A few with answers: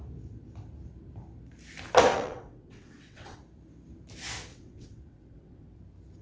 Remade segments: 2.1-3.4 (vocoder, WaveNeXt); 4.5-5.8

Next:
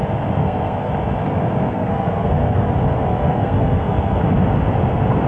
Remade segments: 0.4-0.9 (codec, SNAC); 1.7-2.7; 3.1-4.2

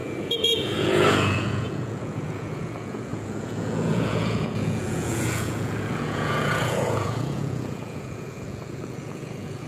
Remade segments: 0.0-9.7 (vocoder, Vocos)

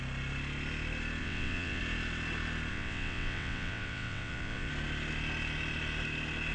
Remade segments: 1.2-1.8 (vocoder, WaveNeXt); 2.7-4.7

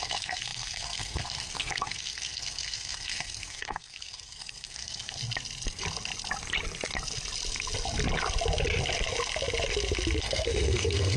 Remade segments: 0.0-5.2 (codec, SNAC); 10.2-11.2